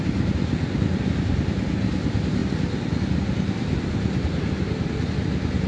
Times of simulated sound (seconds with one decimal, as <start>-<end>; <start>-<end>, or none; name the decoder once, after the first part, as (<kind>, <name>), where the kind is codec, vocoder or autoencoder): none